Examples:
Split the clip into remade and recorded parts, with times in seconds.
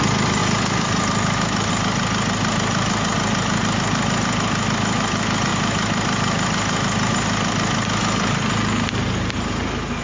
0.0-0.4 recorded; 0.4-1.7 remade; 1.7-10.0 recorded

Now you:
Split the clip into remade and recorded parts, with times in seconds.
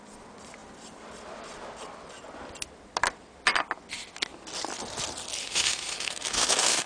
0.0-5.4 recorded; 5.4-6.9 remade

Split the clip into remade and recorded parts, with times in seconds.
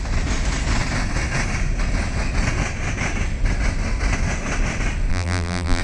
0.0-5.1 recorded; 5.1-5.8 remade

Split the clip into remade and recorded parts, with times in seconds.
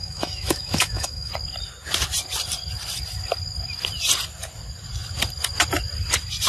0.0-1.3 remade; 1.3-6.5 recorded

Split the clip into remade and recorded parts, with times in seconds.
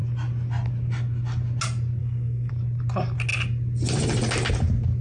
0.0-2.0 recorded; 2.0-2.5 remade; 2.5-5.0 recorded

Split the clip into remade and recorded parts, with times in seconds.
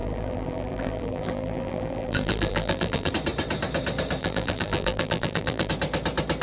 0.0-3.1 remade; 3.1-4.2 recorded; 4.2-5.7 remade; 5.7-6.4 recorded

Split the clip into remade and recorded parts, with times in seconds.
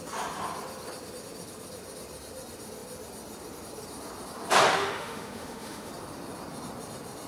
0.0-4.7 recorded; 4.7-5.9 remade; 5.9-7.3 recorded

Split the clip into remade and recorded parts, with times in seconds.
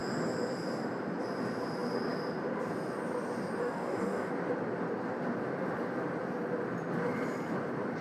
0.0-3.6 recorded; 3.6-4.3 remade; 4.3-8.0 recorded